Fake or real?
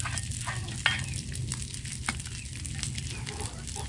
real